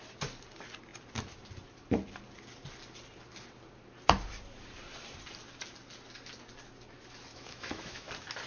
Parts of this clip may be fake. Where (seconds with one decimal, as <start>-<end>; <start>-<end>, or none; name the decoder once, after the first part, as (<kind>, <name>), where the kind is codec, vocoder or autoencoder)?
7.3-8.1 (autoencoder, DAC-VAE)